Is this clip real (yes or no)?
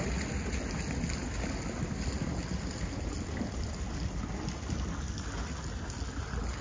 yes